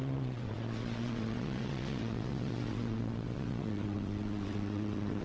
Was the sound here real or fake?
fake